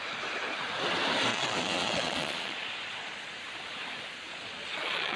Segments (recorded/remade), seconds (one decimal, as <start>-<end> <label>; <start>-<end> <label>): 0.0-1.3 recorded; 1.3-3.4 remade; 3.4-4.3 recorded; 4.3-5.2 remade